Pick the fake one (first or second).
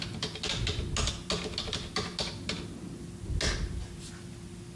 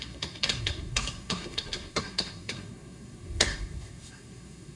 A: second